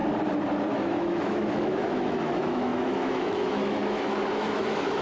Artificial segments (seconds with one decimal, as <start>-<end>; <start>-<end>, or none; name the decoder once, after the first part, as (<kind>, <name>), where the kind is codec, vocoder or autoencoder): 0.7-5.0 (autoencoder, DAC-VAE)